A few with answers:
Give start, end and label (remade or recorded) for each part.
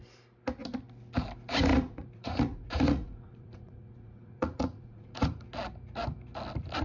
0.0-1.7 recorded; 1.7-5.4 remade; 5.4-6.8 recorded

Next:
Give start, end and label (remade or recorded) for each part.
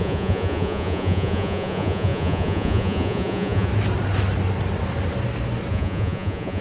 0.0-3.7 remade; 3.7-5.7 recorded; 5.7-6.6 remade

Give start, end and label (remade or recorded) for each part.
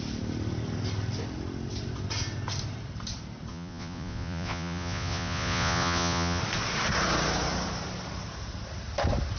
0.0-3.5 recorded; 3.5-6.4 remade; 6.4-9.4 recorded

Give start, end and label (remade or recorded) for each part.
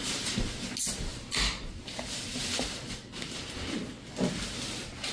0.0-5.1 recorded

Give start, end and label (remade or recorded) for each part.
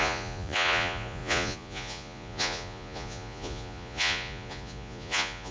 0.0-5.5 remade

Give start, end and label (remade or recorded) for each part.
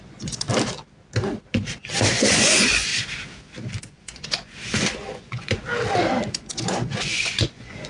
0.0-0.5 remade; 0.5-2.1 recorded; 2.1-2.9 remade; 2.9-3.8 recorded; 3.8-5.7 remade; 5.7-6.3 recorded; 6.3-7.9 remade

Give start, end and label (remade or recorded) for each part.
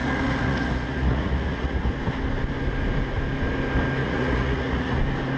0.0-1.9 remade; 1.9-4.0 recorded; 4.0-5.0 remade; 5.0-5.4 recorded